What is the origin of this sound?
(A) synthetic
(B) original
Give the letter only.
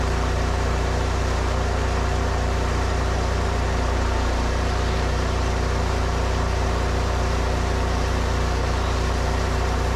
A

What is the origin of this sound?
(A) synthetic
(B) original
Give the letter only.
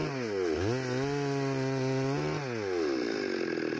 B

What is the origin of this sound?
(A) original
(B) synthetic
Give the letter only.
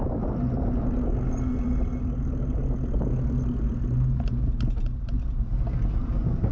A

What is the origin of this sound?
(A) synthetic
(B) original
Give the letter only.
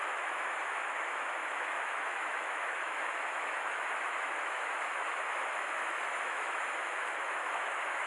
A